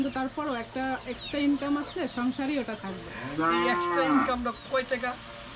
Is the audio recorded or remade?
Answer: recorded